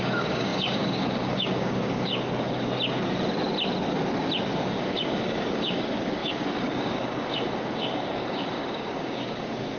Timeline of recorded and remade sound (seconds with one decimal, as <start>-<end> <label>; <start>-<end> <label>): 0.0-2.1 remade; 2.1-4.8 recorded; 4.8-9.8 remade